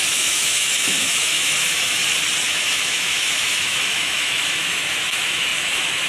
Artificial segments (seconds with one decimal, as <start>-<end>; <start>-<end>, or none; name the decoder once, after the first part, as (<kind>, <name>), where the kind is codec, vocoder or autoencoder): 0.0-2.0 (autoencoder, DAC-VAE); 2.5-6.1